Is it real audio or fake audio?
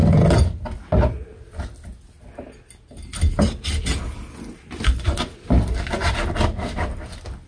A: real